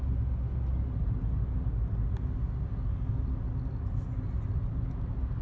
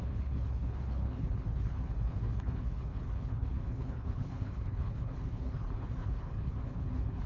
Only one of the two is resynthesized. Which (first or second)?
second